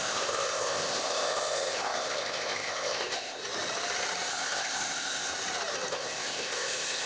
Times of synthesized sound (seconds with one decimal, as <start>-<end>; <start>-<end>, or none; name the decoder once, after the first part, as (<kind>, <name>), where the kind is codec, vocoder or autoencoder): 0.0-3.4 (codec, ZipCodec); 4.3-5.3; 5.9-7.1